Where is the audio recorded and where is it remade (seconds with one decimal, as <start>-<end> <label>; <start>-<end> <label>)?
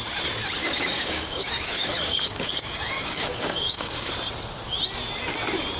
0.0-0.6 recorded; 0.6-4.1 remade; 4.1-5.8 recorded